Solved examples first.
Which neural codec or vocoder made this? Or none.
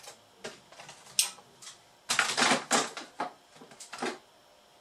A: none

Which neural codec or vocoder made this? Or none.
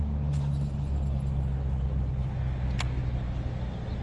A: none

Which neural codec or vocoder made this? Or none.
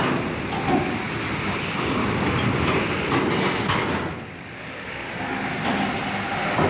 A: none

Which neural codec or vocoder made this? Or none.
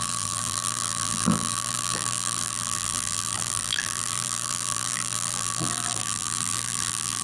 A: vocoder, BigVGAN v2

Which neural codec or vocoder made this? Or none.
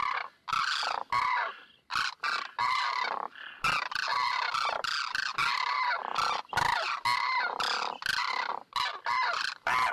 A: none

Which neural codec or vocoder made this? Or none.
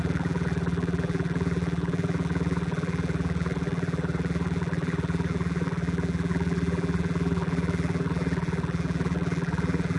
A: vocoder, BigVGAN v2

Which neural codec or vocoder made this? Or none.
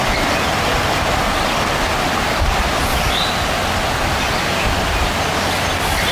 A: none